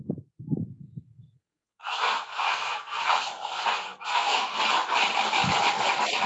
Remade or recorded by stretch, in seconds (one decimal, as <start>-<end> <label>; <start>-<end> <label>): 0.0-0.8 recorded; 0.8-4.6 remade; 4.6-6.3 recorded

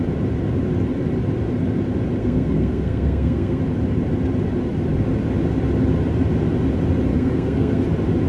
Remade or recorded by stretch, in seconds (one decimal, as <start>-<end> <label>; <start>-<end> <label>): 0.0-2.2 recorded; 2.2-3.6 remade; 3.6-7.1 recorded; 7.1-7.8 remade; 7.8-8.3 recorded

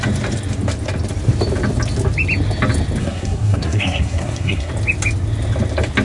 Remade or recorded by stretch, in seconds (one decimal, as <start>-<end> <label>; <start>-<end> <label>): 0.0-3.0 recorded; 3.0-4.7 remade; 4.7-6.0 recorded

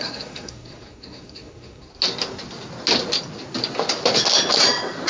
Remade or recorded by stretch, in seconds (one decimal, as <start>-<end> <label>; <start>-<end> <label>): 0.0-1.9 remade; 1.9-5.1 recorded

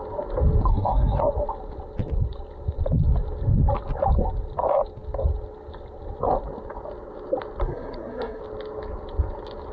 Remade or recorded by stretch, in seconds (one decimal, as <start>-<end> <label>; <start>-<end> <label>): 0.0-0.7 recorded; 0.7-1.2 remade; 1.2-7.6 recorded; 7.6-8.4 remade; 8.4-9.7 recorded

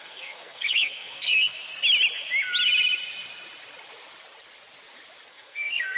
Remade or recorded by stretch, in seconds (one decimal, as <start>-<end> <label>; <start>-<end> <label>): 0.0-1.7 remade; 1.7-5.3 recorded; 5.3-6.0 remade

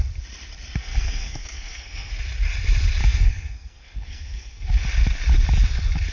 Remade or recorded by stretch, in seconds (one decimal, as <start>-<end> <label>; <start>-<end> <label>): 0.0-0.8 recorded; 0.8-2.1 remade; 2.1-3.0 recorded; 3.0-4.8 remade; 4.8-6.1 recorded

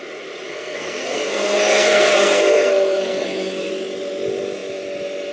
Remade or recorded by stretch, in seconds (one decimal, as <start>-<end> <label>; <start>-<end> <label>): 0.0-0.5 recorded; 0.5-3.7 remade; 3.7-5.3 recorded